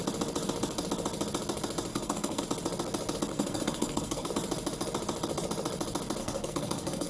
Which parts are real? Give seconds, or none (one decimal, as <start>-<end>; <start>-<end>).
0.0-1.9; 2.4-3.3; 4.3-6.2